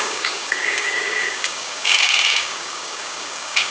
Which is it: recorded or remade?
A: remade